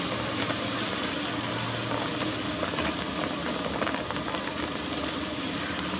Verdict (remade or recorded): recorded